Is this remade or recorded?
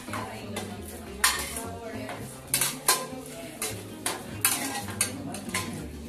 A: recorded